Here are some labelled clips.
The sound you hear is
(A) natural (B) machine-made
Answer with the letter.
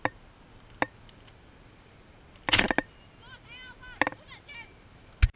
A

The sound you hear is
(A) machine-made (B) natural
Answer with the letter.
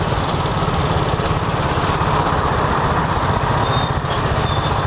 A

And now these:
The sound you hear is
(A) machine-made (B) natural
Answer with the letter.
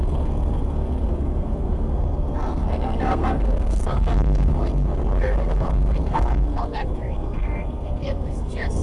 A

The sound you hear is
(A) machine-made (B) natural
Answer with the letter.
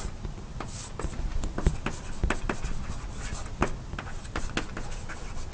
B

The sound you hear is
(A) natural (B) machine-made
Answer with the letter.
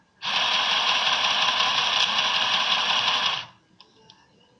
A